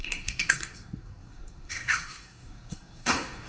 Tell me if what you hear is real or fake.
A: fake